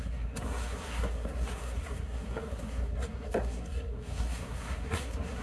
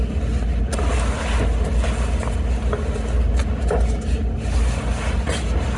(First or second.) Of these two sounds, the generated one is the first